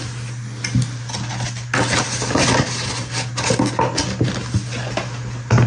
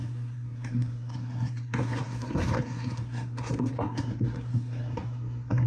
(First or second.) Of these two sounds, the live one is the first